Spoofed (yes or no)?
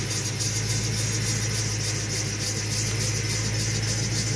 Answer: no